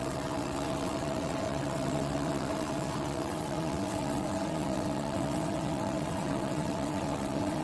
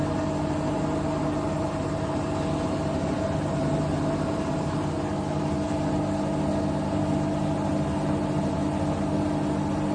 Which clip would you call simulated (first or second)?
first